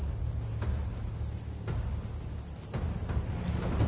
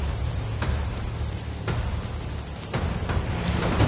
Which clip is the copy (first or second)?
second